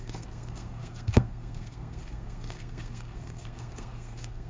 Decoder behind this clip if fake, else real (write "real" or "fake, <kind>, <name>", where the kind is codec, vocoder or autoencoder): fake, codec, SNAC